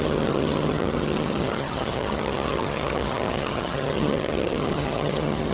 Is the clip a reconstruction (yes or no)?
yes